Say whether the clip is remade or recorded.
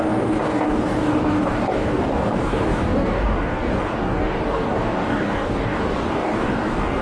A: remade